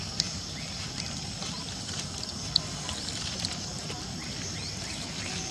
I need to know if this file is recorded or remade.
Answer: recorded